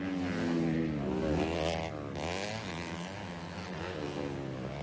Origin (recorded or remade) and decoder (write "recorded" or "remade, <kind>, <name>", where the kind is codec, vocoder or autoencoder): recorded